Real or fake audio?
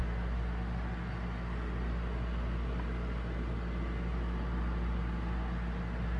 real